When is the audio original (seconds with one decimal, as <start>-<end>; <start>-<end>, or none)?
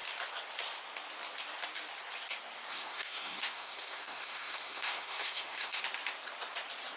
0.0-2.7; 5.8-7.0